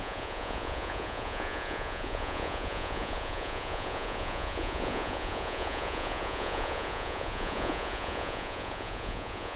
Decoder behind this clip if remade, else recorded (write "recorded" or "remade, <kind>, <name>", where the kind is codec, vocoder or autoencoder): remade, vocoder, Vocos